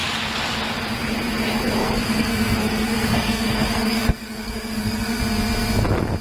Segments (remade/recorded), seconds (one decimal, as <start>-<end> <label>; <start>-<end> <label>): 0.0-1.8 recorded; 1.8-5.2 remade; 5.2-6.2 recorded